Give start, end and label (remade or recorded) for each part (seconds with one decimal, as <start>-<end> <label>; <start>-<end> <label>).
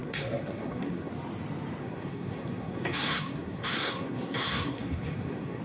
0.0-1.1 remade; 1.1-1.8 recorded; 1.8-5.6 remade